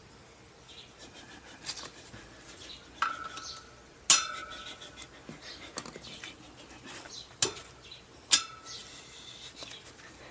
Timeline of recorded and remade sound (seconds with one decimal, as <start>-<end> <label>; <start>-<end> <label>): 0.0-10.3 recorded